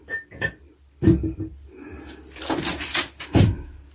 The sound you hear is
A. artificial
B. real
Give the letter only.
A